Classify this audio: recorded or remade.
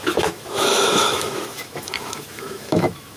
remade